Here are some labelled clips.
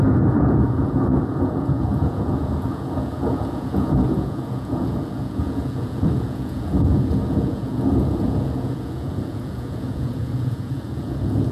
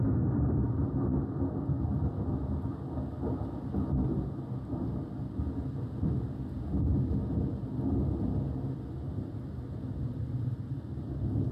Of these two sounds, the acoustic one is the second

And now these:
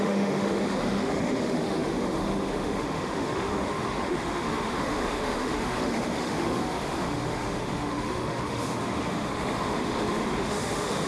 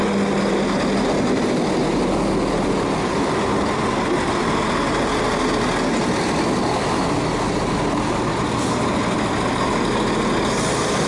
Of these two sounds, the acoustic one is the second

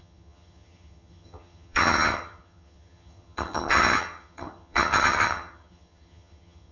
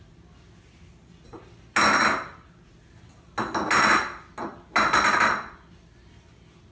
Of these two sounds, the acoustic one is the second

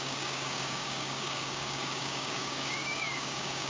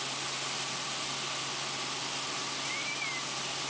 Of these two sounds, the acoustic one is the second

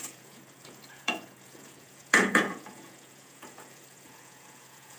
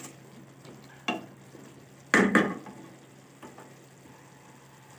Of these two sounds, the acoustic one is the second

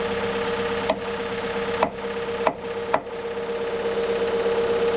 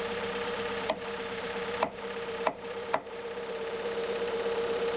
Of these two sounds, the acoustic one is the first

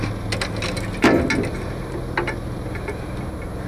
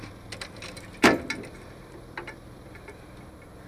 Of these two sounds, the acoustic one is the first